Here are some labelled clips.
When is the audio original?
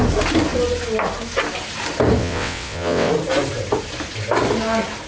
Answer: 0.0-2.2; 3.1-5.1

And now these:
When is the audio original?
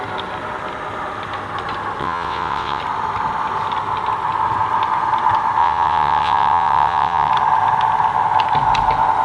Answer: 0.0-2.0; 2.8-5.6; 7.3-9.2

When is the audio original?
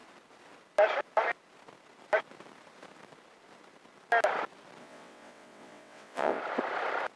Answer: 0.0-4.8; 6.4-7.2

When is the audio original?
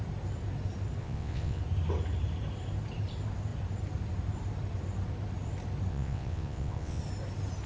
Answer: 0.0-1.0; 1.6-5.9; 7.0-7.7